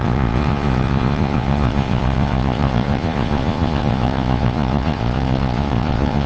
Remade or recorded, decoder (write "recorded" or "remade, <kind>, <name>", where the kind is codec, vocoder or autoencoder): remade, vocoder, Vocos